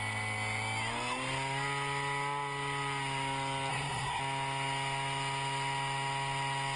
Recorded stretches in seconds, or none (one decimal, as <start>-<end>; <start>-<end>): 0.0-3.7; 4.2-6.8